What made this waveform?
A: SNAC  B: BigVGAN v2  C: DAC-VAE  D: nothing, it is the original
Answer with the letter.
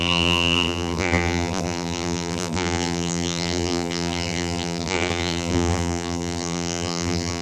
B